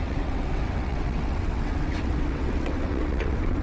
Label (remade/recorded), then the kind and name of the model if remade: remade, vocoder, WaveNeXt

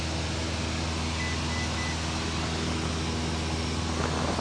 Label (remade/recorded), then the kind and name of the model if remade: recorded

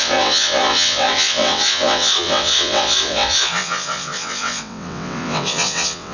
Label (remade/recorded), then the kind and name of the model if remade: remade, vocoder, WaveNeXt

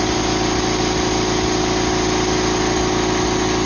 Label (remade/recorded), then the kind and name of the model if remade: recorded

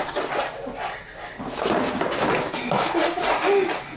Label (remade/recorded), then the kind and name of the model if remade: recorded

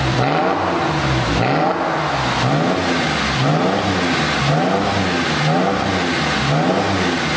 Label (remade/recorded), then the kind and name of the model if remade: recorded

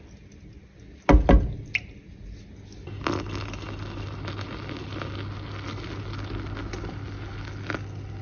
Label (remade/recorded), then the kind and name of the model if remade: recorded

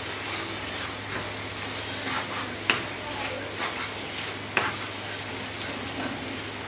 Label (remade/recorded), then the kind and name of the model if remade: recorded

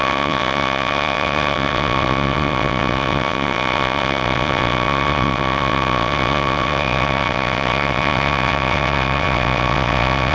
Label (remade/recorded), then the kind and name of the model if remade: remade, vocoder, WaveNeXt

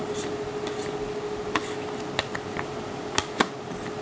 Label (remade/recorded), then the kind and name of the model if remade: recorded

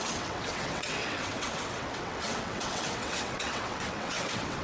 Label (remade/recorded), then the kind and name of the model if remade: remade, vocoder, WaveNeXt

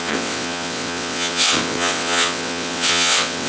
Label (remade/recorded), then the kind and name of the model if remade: remade, vocoder, WaveNeXt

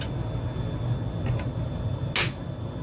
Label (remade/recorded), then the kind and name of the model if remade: recorded